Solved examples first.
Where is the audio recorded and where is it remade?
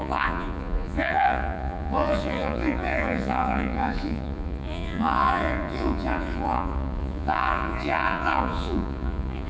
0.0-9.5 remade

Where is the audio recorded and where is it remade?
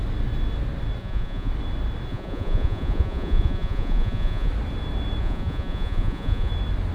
0.0-1.0 recorded; 1.0-1.5 remade; 1.5-2.1 recorded; 2.1-4.5 remade; 4.5-5.2 recorded; 5.2-6.5 remade; 6.5-6.9 recorded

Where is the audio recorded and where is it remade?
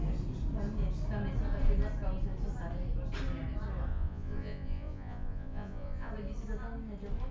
0.0-3.9 recorded; 3.9-6.1 remade; 6.1-7.3 recorded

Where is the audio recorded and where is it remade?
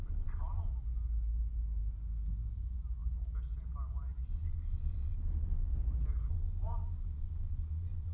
0.0-0.7 remade; 0.7-4.3 recorded; 4.3-5.7 remade; 5.7-6.3 recorded; 6.3-8.1 remade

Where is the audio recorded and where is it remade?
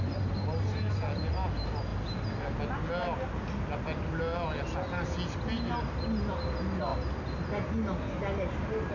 0.0-8.9 recorded